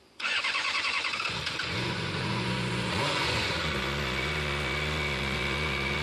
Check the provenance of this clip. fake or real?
fake